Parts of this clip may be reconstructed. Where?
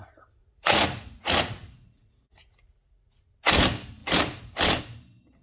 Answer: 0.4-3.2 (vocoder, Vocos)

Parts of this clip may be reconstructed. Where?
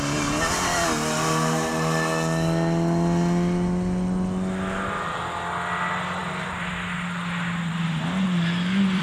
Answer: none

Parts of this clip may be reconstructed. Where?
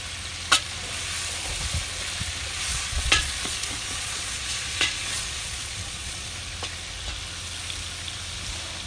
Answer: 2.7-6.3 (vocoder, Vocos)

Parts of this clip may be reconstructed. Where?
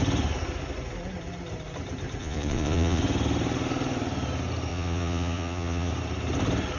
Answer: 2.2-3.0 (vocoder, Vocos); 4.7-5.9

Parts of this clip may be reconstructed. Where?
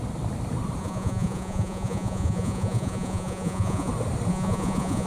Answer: 0.8-3.9 (vocoder, Vocos); 4.3-5.1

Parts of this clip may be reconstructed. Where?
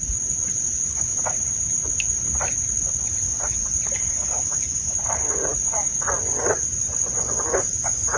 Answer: 0.0-1.1 (vocoder, Vocos); 6.0-8.2